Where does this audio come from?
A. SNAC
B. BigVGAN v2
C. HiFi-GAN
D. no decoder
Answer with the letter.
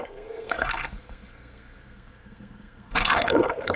A